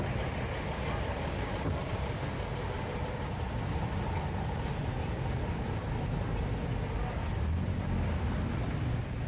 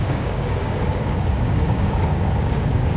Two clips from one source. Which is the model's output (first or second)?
second